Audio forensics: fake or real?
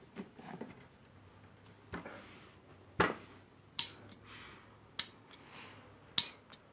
real